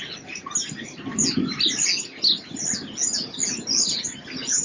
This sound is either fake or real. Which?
real